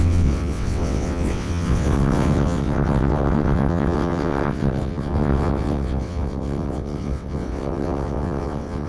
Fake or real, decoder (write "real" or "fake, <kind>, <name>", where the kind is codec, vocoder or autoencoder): fake, vocoder, WaveNeXt